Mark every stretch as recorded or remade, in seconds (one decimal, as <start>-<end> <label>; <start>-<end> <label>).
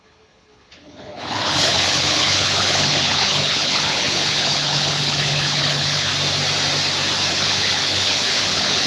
0.0-6.1 remade; 6.1-7.3 recorded; 7.3-8.9 remade